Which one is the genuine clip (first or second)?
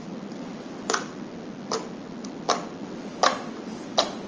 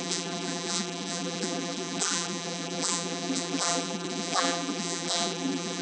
first